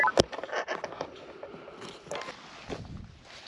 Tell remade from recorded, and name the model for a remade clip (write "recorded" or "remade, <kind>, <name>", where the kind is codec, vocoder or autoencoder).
recorded